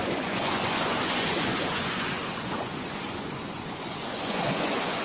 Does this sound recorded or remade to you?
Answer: remade